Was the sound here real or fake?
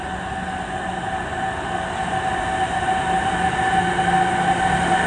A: real